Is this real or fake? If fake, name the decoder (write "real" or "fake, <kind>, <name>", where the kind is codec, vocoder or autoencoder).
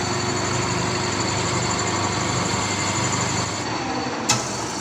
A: real